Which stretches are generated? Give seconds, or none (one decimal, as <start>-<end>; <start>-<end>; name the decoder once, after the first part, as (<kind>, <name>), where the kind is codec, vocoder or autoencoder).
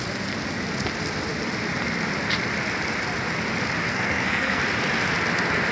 3.9-4.6 (codec, SNAC)